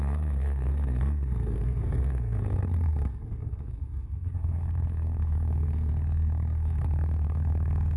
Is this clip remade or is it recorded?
remade